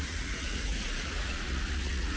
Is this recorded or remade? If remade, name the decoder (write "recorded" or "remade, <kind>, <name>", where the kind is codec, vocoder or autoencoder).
remade, vocoder, Vocos